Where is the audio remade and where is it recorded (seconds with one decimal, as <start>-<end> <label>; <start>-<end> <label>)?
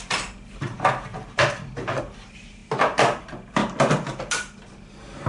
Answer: 0.0-3.6 remade; 3.6-4.2 recorded; 4.2-5.3 remade